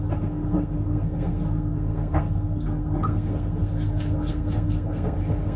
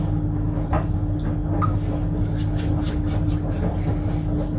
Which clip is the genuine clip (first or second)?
second